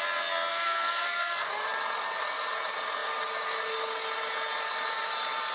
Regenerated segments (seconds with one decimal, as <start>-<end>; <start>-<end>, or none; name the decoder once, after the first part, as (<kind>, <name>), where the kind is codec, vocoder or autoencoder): 0.5-1.5 (codec, SNAC)